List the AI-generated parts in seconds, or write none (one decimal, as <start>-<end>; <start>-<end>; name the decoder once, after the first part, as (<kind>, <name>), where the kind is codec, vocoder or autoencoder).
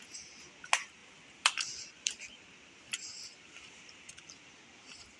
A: 1.0-4.1 (vocoder, BigVGAN v2)